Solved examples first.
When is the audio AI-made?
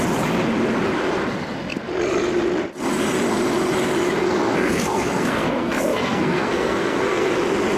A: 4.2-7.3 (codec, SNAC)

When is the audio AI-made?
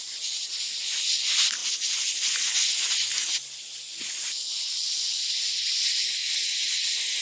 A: 6.2-6.7 (vocoder, BigVGAN v2)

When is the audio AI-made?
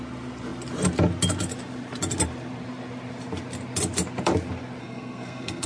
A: 4.8-5.7 (codec, SNAC)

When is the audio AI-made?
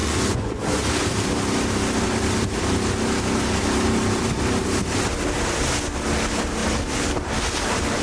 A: 0.0-0.8 (vocoder, Vocos)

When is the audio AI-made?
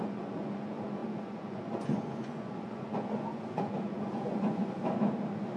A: 0.0-4.6 (vocoder, Vocos)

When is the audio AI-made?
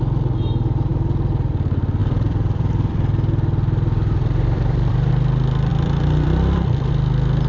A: 2.0-5.1 (vocoder, BigVGAN v2); 5.7-6.9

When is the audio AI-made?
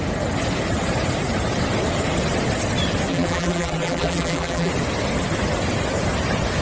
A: 3.1-4.7 (vocoder, BigVGAN v2)